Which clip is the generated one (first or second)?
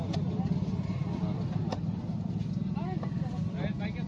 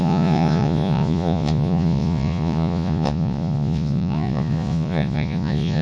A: second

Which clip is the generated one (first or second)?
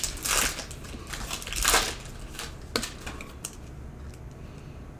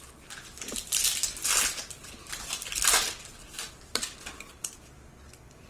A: second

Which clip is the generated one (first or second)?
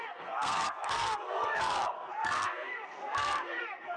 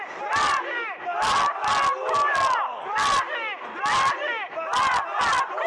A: first